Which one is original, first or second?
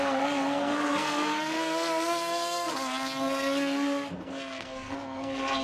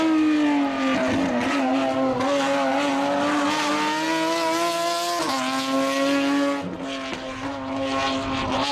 second